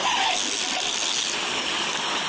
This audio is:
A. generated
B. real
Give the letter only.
B